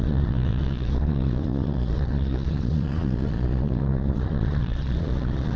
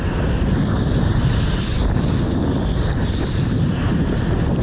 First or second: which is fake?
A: first